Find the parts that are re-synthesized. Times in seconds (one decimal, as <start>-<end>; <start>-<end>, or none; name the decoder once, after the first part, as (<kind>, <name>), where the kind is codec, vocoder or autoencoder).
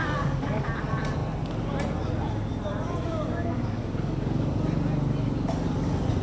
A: 0.0-0.6 (codec, DAC); 3.1-4.5